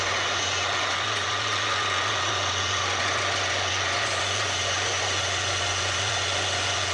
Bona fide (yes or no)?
no